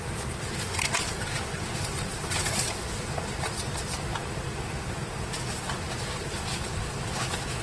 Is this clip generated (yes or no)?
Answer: no